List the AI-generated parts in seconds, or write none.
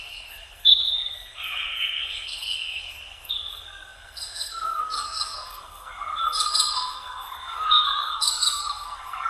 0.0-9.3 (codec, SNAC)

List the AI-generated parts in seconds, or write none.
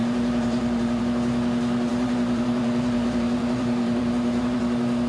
0.0-1.0 (vocoder, BigVGAN v2); 1.9-4.6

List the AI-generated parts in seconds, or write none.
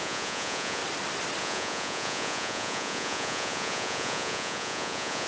0.0-0.8 (vocoder, Vocos); 1.4-5.3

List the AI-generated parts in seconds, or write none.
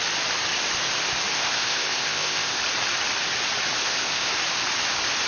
1.3-2.6 (codec, ZipCodec); 3.8-4.3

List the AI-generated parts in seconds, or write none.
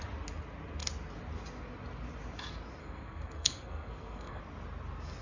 2.8-4.4 (codec, SNAC)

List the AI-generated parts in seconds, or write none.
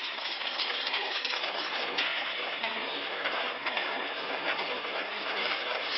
0.0-6.0 (codec, SNAC)